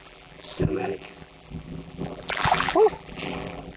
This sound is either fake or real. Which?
fake